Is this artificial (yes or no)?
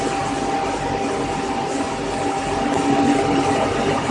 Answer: no